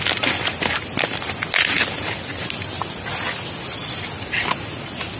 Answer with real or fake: real